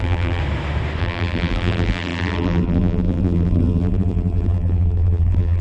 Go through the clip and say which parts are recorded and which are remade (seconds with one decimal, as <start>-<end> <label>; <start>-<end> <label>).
0.0-0.4 remade; 0.4-1.0 recorded; 1.0-5.6 remade